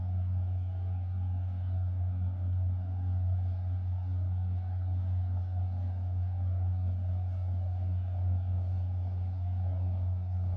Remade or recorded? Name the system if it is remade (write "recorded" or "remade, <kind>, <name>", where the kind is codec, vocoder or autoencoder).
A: remade, codec, DAC